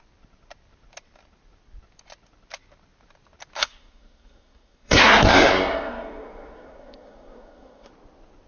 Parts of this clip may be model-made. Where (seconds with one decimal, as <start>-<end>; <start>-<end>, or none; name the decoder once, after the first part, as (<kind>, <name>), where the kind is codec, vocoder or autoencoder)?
3.6-7.9 (codec, SNAC)